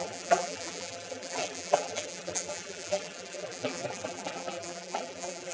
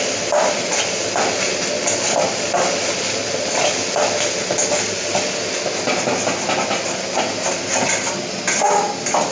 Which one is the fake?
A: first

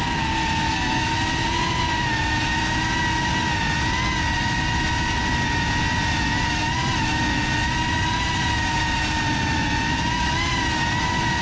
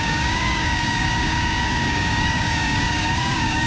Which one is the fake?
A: second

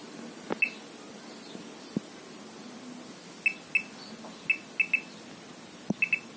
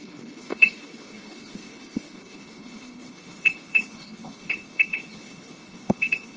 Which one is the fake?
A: second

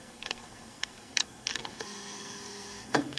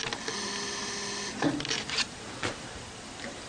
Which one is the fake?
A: first